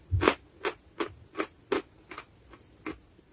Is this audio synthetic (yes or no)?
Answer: no